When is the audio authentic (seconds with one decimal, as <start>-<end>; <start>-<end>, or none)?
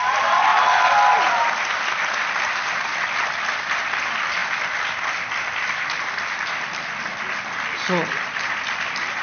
0.5-1.1